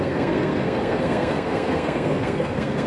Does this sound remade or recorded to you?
remade